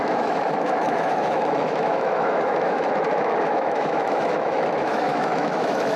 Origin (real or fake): fake